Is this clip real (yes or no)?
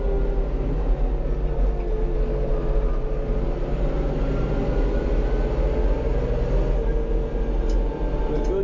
yes